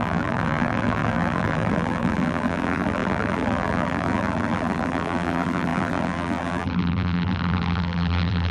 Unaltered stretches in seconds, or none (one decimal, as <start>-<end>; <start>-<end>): none